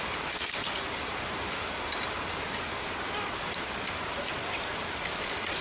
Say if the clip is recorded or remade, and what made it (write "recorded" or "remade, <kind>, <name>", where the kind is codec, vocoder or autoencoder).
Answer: recorded